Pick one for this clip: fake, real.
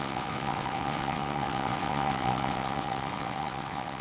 fake